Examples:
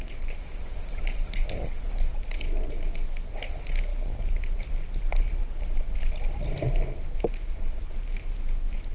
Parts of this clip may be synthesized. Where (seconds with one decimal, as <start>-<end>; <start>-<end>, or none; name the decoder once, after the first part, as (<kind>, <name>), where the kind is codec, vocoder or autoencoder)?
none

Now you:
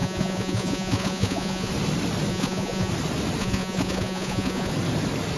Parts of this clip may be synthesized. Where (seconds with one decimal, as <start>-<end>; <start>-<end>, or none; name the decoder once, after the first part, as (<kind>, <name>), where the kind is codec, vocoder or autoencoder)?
0.0-1.7 (vocoder, Vocos); 2.3-2.9; 3.4-4.7

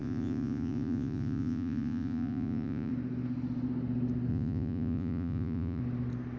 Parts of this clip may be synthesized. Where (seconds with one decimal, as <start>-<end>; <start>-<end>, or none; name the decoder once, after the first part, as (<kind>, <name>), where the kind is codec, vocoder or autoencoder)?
0.0-2.9 (vocoder, Vocos); 4.3-5.8